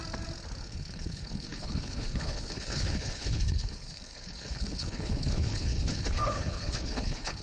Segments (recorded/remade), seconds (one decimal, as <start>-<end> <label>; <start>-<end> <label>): 0.0-0.6 recorded; 0.6-7.4 remade